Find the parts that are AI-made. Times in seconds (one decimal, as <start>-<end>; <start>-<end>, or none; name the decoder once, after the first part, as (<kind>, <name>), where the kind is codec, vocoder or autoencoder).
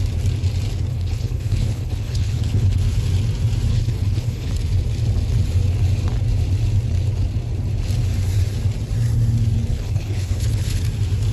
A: 0.9-2.8 (codec, HILCodec); 3.7-4.5; 9.7-10.8